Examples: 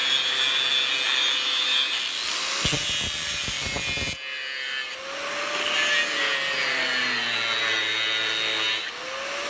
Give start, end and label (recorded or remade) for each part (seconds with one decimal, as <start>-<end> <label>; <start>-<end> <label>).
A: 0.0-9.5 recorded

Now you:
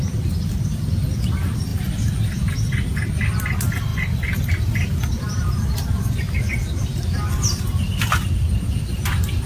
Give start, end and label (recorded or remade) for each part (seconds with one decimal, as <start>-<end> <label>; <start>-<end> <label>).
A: 0.0-9.5 recorded

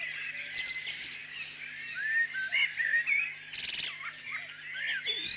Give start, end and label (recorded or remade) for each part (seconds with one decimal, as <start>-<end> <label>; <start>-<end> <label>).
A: 0.0-5.4 recorded

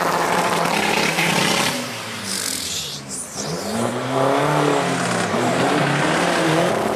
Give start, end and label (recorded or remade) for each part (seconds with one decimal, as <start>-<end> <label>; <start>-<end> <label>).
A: 0.0-3.9 remade; 3.9-5.3 recorded; 5.3-7.0 remade